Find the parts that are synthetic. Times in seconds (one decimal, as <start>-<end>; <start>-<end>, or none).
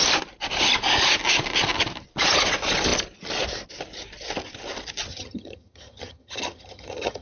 5.1-7.2